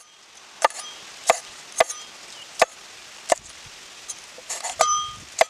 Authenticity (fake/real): real